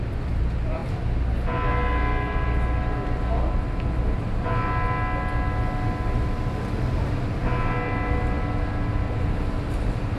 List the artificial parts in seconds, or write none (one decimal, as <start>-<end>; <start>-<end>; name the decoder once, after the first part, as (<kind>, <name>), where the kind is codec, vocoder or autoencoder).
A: none